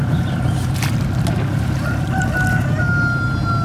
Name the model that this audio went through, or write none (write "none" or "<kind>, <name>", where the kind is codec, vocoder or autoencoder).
none